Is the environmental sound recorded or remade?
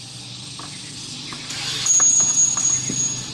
recorded